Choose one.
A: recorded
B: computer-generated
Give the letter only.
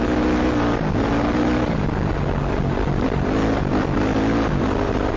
A